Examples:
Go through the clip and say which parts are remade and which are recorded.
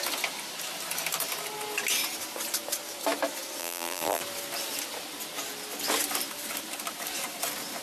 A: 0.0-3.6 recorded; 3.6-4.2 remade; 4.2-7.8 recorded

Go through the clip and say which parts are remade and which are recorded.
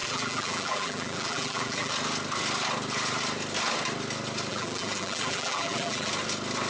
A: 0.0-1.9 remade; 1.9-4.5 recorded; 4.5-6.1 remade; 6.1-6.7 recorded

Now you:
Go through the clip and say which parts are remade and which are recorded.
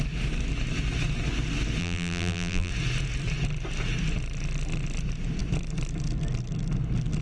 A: 0.0-1.8 recorded; 1.8-2.7 remade; 2.7-7.2 recorded